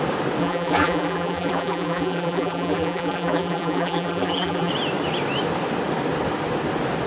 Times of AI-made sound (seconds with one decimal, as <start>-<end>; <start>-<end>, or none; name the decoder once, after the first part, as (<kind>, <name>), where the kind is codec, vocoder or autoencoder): 0.4-4.7 (vocoder, BigVGAN v2)

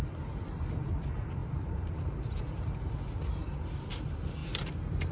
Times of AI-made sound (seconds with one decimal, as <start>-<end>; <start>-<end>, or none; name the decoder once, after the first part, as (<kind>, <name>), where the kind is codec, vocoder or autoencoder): 1.4-2.3 (vocoder, BigVGAN v2)

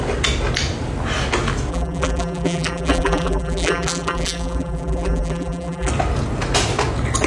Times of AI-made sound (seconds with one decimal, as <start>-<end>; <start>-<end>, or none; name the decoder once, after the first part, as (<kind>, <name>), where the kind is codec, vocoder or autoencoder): 1.7-5.9 (vocoder, BigVGAN v2)

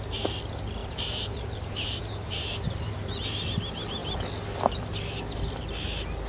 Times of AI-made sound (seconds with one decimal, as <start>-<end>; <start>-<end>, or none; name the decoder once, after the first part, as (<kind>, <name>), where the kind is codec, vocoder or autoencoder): 0.8-3.2 (vocoder, BigVGAN v2)

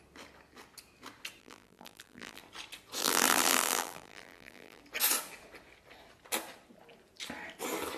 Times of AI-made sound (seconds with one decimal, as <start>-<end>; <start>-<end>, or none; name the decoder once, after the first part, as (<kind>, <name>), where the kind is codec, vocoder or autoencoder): 1.4-2.4 (vocoder, BigVGAN v2); 3.0-4.8

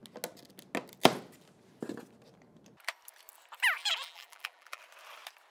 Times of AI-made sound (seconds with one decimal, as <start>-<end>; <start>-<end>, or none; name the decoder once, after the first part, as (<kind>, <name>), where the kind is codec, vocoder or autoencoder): 3.8-4.8 (vocoder, BigVGAN v2)

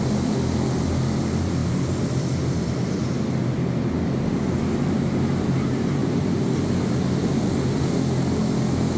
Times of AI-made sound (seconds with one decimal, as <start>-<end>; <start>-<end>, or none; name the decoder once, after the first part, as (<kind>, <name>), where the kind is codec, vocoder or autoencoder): 1.6-2.9 (vocoder, BigVGAN v2); 6.0-7.8